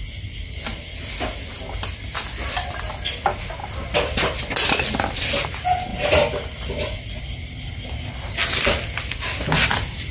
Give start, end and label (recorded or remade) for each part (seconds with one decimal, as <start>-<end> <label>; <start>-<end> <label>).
0.0-10.1 recorded